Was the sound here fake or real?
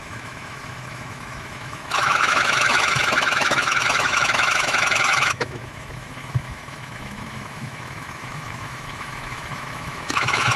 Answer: fake